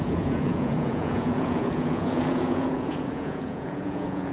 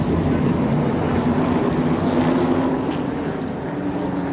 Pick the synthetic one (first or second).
first